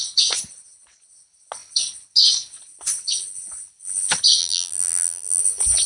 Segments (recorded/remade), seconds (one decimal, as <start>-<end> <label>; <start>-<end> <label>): 0.0-4.4 recorded; 4.4-5.4 remade; 5.4-5.9 recorded